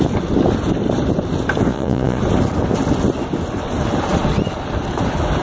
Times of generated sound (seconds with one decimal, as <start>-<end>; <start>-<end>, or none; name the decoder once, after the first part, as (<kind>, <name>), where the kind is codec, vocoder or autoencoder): 1.7-2.2 (vocoder, Vocos)